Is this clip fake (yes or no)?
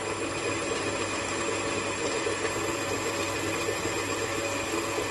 no